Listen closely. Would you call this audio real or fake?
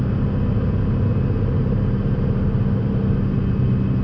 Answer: real